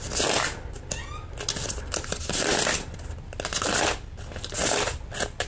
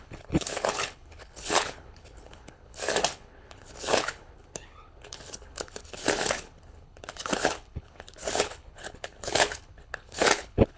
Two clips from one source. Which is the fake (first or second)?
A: second